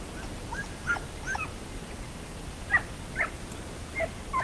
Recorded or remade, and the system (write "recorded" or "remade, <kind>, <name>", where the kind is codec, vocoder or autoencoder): recorded